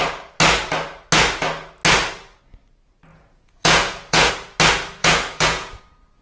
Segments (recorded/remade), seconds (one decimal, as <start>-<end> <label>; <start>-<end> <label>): 0.0-3.1 recorded; 3.1-4.3 remade; 4.3-5.0 recorded; 5.0-5.8 remade; 5.8-6.2 recorded